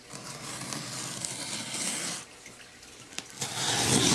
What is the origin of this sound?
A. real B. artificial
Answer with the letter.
A